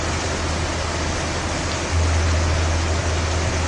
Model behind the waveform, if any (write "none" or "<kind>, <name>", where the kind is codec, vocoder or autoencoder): none